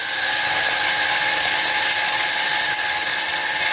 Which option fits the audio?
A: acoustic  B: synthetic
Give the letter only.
A